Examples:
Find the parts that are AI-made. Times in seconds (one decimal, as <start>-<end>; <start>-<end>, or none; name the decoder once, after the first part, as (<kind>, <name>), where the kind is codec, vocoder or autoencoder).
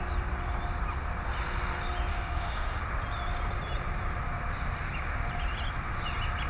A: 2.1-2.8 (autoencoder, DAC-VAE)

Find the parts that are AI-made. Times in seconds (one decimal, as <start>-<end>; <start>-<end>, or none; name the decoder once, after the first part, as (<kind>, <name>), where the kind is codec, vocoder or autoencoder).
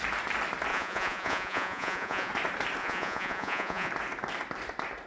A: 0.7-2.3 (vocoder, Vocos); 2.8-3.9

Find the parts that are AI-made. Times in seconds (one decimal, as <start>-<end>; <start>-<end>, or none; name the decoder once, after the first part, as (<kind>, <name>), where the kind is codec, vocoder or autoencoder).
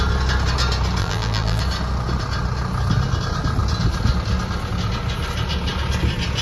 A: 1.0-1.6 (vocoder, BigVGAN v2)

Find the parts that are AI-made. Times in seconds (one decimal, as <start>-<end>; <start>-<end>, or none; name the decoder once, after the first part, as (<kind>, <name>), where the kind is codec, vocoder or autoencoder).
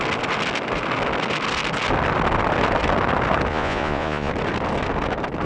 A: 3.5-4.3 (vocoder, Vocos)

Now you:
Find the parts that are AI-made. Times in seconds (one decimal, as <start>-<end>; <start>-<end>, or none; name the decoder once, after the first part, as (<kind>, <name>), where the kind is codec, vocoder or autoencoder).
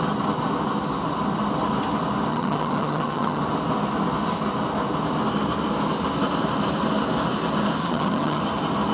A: 2.3-3.4 (vocoder, HiFi-GAN); 7.8-8.4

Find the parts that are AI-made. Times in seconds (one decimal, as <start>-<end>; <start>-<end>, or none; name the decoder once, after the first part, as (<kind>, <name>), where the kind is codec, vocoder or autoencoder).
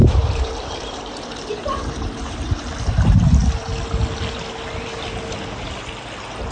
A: 0.0-2.7 (vocoder, BigVGAN v2)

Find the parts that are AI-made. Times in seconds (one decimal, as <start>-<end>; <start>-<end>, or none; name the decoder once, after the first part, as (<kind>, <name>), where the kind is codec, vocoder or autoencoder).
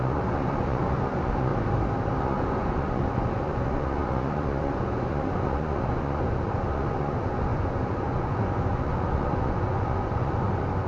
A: 0.0-1.5 (vocoder, Vocos); 2.2-10.9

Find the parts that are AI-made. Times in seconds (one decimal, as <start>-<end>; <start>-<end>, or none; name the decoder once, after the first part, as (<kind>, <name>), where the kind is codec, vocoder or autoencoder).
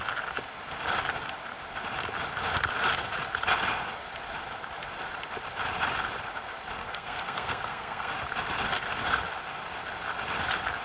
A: 6.8-8.1 (codec, SNAC)